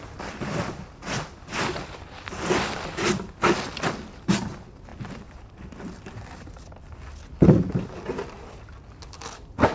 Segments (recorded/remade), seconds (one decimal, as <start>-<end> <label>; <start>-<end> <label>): 0.0-9.7 recorded